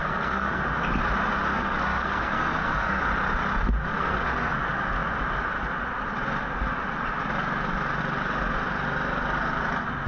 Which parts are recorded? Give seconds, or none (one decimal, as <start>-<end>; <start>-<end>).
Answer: 0.6-1.5; 3.0-3.9; 4.5-10.1